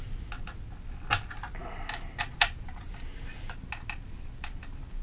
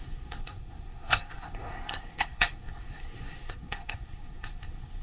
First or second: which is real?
first